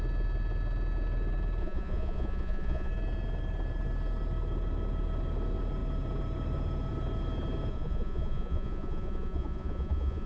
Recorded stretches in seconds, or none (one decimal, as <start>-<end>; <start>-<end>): 0.0-1.6; 2.9-7.7